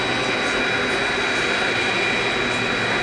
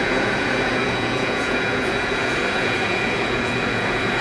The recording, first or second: first